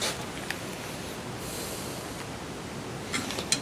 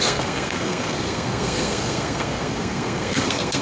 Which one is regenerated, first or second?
second